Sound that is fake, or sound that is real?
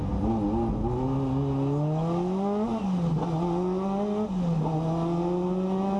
real